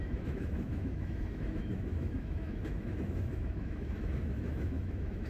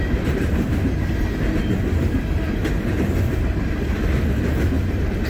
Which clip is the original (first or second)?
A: second